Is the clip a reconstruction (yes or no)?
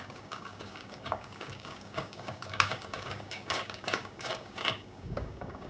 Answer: yes